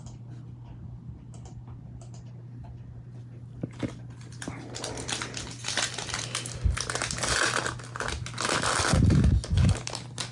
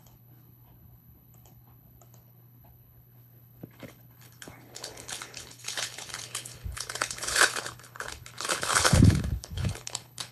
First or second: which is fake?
second